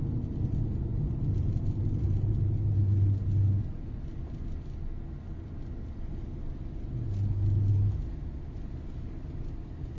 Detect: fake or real real